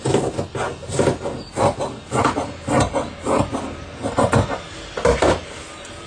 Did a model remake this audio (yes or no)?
no